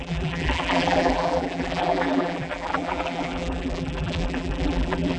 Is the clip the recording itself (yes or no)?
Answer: no